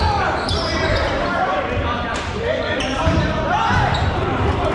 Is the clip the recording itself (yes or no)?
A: no